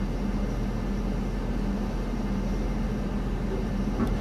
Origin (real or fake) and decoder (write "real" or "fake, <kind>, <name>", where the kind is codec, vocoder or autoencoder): real